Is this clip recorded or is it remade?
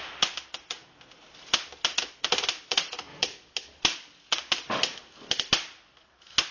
recorded